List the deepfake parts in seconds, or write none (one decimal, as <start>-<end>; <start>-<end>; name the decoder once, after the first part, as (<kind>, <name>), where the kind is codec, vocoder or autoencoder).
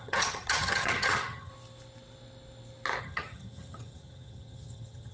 0.0-1.5 (vocoder, HiFi-GAN); 3.0-5.1